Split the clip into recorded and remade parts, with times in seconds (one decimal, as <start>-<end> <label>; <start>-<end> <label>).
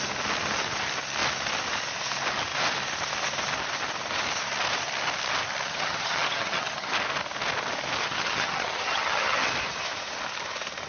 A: 0.0-5.7 recorded; 5.7-6.9 remade; 6.9-8.0 recorded; 8.0-9.5 remade; 9.5-10.9 recorded